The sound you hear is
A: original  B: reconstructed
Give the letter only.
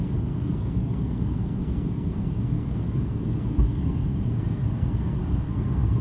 B